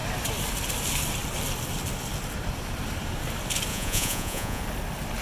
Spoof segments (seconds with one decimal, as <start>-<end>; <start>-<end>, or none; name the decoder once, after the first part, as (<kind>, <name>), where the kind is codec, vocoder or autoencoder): 3.7-4.6 (vocoder, Vocos)